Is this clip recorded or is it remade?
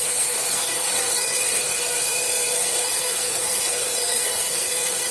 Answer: remade